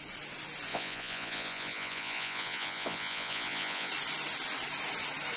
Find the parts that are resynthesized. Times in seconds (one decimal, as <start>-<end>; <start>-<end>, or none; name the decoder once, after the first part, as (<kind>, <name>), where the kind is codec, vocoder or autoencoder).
0.7-3.9 (vocoder, Vocos)